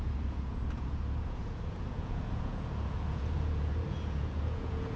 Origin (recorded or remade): remade